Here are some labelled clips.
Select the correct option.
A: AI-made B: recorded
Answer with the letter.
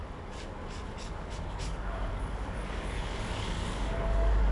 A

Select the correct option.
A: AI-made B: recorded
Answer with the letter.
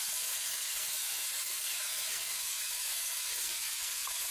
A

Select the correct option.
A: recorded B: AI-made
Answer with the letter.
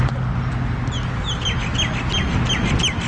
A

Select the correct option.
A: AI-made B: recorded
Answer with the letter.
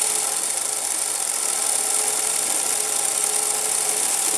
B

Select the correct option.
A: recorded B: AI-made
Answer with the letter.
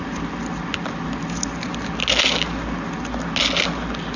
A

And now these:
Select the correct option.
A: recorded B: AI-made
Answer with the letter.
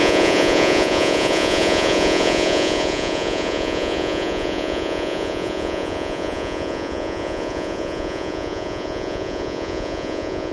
B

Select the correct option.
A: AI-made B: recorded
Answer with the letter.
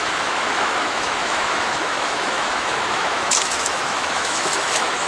A